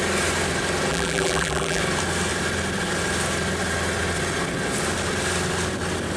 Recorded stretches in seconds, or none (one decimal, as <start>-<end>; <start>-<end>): 0.0-0.9; 1.8-6.2